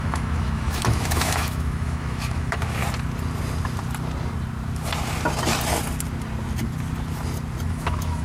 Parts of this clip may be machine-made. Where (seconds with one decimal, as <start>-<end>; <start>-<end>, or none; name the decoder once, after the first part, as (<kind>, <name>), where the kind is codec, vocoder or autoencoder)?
0.0-2.8 (autoencoder, DAC-VAE); 7.7-8.2